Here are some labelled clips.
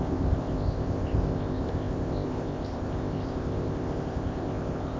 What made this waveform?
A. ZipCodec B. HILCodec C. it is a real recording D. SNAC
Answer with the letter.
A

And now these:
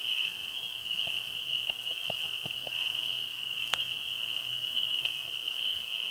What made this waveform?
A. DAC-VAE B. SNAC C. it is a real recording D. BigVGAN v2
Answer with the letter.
B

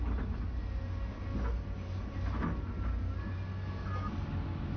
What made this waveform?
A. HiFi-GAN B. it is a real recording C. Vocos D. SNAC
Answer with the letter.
B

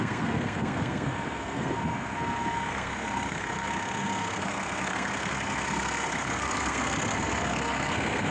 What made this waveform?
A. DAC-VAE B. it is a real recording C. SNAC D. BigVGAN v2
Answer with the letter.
C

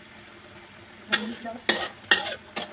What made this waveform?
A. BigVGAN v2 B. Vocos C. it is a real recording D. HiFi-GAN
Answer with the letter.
C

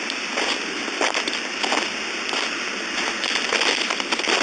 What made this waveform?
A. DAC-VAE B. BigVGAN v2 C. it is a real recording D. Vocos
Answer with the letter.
C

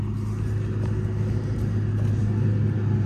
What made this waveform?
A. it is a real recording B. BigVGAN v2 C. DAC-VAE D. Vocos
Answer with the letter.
A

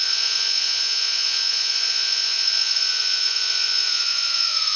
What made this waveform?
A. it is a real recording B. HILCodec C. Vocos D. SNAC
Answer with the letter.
C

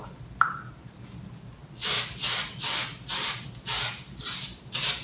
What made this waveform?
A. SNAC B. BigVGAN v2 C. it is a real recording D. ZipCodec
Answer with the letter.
C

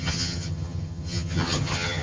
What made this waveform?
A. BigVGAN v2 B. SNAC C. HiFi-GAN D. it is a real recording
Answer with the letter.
C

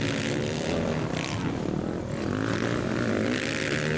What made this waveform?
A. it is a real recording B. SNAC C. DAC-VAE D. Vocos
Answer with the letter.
A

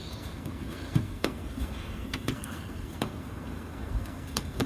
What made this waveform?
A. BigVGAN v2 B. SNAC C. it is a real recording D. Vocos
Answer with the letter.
B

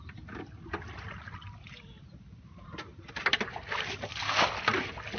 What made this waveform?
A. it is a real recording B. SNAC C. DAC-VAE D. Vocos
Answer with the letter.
A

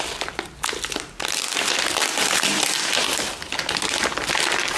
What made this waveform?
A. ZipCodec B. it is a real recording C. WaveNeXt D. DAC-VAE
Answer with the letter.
B